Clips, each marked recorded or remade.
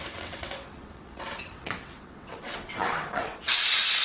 remade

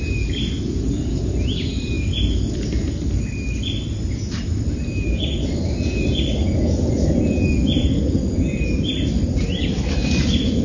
recorded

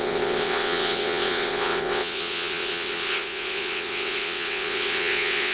remade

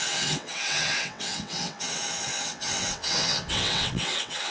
remade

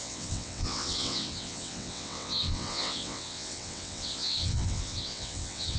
remade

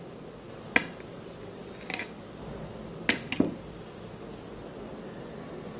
recorded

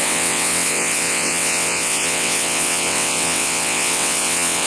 remade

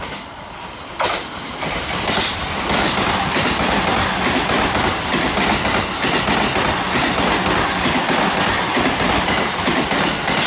recorded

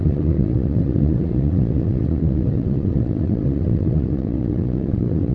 remade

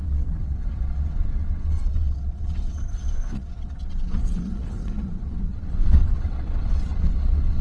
remade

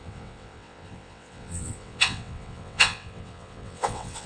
remade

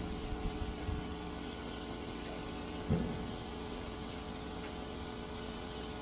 remade